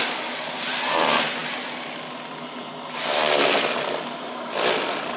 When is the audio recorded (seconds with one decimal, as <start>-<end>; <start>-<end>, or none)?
0.0-5.2